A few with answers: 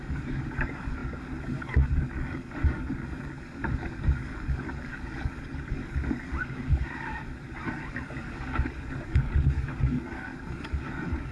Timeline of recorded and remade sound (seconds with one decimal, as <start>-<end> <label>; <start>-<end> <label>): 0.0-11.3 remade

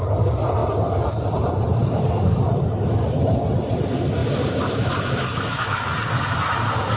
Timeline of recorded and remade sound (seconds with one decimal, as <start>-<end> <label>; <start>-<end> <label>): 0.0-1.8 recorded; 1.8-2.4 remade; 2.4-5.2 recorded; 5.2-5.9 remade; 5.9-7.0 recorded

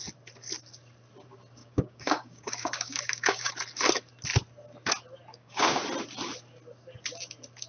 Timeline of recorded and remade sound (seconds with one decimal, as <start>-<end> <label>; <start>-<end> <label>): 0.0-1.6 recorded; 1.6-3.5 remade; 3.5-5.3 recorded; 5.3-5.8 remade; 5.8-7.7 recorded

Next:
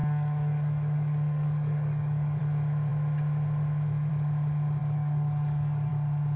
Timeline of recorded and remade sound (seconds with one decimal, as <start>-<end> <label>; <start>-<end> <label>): 0.0-2.4 remade; 2.4-4.8 recorded; 4.8-5.9 remade; 5.9-6.4 recorded

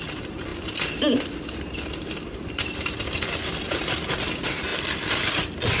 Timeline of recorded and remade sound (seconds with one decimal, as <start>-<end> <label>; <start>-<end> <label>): 0.0-5.8 recorded

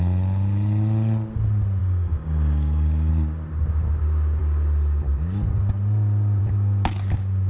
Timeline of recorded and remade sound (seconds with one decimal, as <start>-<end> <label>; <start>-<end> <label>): 0.0-1.8 recorded; 1.8-3.1 remade; 3.1-7.5 recorded

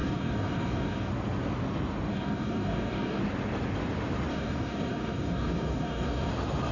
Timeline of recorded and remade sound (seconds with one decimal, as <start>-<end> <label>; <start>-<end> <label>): 0.0-1.1 remade; 1.1-2.1 recorded; 2.1-3.2 remade; 3.2-4.3 recorded; 4.3-6.3 remade; 6.3-6.7 recorded